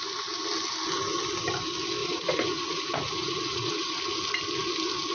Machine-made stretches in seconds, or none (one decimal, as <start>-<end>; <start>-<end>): 2.0-4.0